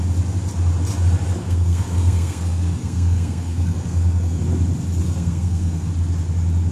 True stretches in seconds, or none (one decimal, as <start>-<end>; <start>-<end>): 0.0-1.4; 4.4-5.0; 5.9-6.7

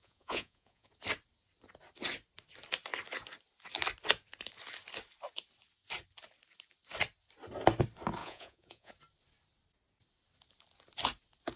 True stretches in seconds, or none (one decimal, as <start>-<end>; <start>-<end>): 0.9-8.2; 8.9-11.6

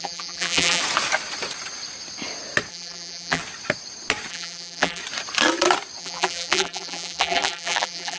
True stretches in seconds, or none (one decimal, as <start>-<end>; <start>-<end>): 0.8-2.7; 3.4-4.3; 5.0-6.0